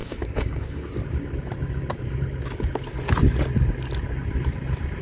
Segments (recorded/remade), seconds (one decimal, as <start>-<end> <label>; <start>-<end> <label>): 0.0-0.9 remade; 0.9-5.0 recorded